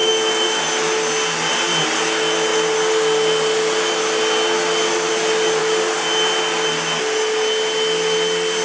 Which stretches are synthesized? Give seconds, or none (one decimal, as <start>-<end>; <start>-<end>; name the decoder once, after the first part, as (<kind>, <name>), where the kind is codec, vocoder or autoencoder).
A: 0.0-0.6 (autoencoder, DAC-VAE)

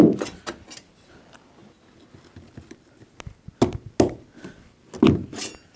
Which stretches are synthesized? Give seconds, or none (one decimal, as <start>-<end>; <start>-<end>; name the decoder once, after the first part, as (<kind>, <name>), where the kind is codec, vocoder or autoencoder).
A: none

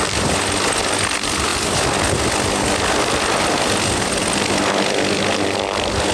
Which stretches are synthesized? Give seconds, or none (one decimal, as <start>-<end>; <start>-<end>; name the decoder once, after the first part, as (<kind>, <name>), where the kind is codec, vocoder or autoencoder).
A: none

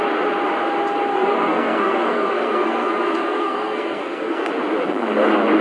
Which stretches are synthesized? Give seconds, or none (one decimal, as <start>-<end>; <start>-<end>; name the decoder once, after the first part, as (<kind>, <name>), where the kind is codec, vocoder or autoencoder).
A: 1.1-4.5 (codec, SNAC)

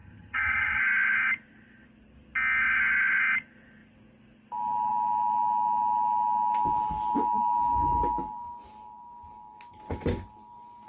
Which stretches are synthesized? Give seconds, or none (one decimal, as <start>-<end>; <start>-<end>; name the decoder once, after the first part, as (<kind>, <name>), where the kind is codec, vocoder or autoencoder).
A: 0.0-0.8 (vocoder, HiFi-GAN)

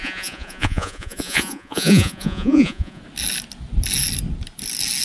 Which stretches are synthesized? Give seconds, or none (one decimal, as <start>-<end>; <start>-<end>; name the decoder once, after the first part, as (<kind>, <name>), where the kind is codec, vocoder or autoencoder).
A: 0.0-3.0 (vocoder, Vocos)

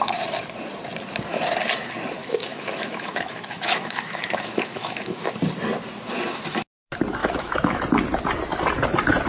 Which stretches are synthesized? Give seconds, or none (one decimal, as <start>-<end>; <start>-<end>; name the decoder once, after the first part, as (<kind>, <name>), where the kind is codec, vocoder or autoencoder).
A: 2.2-5.3 (autoencoder, DAC-VAE); 7.2-7.8